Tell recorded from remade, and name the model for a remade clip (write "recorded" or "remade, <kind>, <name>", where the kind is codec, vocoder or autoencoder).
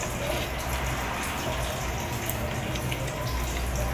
recorded